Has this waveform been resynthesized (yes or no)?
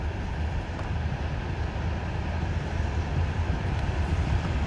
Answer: no